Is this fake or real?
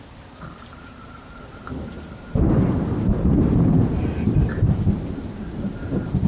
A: fake